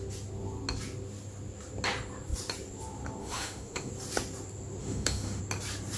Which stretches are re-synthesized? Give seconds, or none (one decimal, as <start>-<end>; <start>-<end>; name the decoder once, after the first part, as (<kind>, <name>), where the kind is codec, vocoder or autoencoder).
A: 3.2-3.9 (autoencoder, DAC-VAE); 4.8-5.4